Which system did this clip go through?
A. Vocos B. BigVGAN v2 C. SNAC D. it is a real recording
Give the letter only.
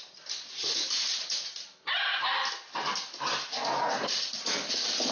D